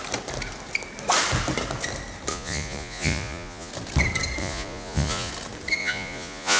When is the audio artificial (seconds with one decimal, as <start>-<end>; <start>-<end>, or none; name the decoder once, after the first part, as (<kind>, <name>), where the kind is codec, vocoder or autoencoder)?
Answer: 2.3-3.7 (vocoder, Vocos); 4.4-5.3; 5.8-6.6

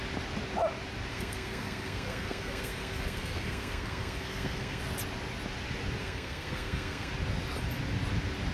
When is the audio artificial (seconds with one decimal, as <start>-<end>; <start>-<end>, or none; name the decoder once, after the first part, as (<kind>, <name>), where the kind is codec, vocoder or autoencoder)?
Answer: 1.1-4.8 (codec, SNAC); 6.0-7.1

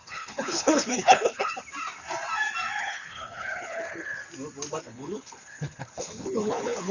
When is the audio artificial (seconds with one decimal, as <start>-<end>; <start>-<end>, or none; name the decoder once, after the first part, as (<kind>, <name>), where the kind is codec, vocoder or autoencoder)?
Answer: 0.0-1.5 (codec, HILCodec); 2.8-4.2; 4.8-6.9

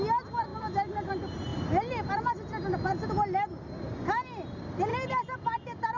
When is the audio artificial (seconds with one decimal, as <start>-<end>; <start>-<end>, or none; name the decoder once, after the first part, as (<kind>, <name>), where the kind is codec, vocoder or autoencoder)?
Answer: 0.5-1.1 (vocoder, BigVGAN v2); 4.9-6.0

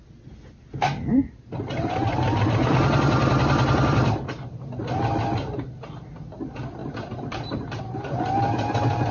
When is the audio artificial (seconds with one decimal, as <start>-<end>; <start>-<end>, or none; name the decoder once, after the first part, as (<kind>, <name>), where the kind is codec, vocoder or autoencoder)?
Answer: 1.1-5.0 (vocoder, BigVGAN v2); 6.8-7.8

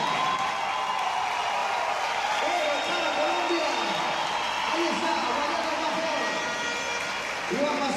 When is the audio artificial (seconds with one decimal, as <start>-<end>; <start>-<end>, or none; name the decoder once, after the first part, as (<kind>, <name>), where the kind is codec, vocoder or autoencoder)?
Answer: none

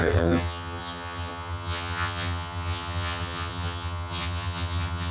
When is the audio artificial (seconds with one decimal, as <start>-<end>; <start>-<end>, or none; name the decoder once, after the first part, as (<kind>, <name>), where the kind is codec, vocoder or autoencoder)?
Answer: 0.0-5.1 (vocoder, HiFi-GAN)